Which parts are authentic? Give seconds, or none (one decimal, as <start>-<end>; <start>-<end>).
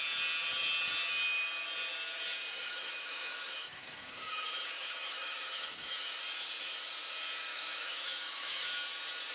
0.0-2.6; 6.2-7.5; 8.7-9.3